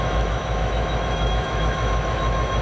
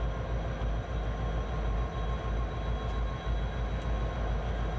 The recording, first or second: second